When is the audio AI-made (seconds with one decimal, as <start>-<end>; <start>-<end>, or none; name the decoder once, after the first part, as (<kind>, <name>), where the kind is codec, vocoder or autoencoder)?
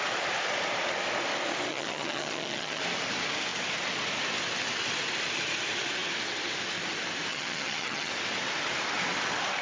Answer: 1.7-2.8 (vocoder, HiFi-GAN); 7.3-8.1